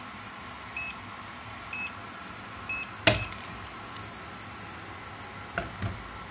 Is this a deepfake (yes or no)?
no